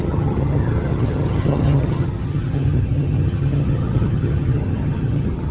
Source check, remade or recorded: remade